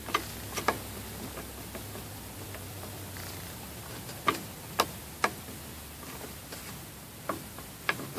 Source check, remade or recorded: recorded